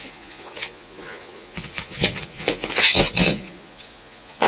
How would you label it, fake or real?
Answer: fake